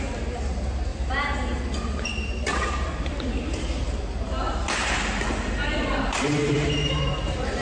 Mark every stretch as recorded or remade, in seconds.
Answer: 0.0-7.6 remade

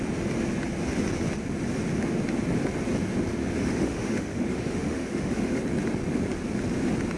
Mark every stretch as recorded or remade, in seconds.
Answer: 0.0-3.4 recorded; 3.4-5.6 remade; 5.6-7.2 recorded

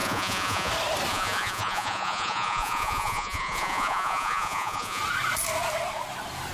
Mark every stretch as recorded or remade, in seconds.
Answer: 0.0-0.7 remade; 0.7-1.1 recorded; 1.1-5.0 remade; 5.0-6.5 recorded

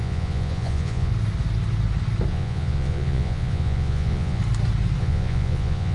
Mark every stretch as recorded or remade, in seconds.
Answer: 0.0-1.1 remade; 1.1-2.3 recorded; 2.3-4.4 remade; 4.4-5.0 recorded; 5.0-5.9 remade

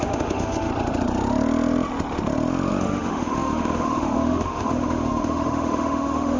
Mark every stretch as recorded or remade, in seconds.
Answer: 0.0-0.7 remade; 0.7-2.8 recorded; 2.8-6.4 remade

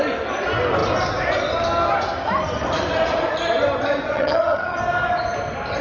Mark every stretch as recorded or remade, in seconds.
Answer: 0.0-4.1 recorded; 4.1-4.8 remade; 4.8-5.8 recorded